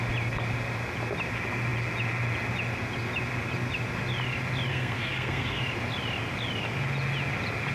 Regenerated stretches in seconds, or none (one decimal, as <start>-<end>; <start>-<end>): 4.7-5.6